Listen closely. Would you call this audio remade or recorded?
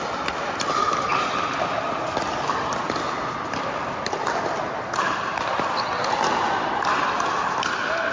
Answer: recorded